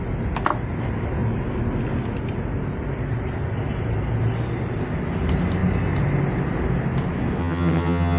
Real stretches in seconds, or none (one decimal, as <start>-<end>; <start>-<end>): 0.0-7.4

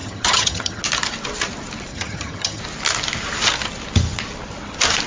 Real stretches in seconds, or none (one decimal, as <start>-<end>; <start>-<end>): 0.8-1.9; 2.6-5.1

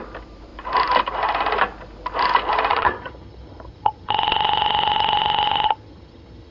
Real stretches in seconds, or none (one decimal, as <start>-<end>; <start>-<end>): 0.0-2.7

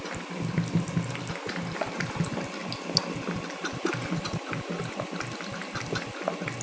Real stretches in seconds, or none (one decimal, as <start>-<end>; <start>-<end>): 0.0-6.6

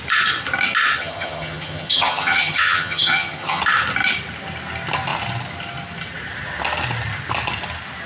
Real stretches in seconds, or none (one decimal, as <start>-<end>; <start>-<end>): 0.0-1.0; 3.6-8.1

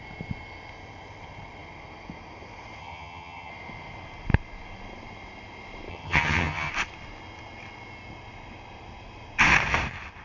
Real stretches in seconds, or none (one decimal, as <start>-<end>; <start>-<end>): 0.0-2.8; 3.5-5.9; 6.7-10.2